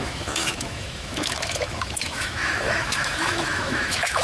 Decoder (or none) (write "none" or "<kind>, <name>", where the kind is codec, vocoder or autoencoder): autoencoder, DAC-VAE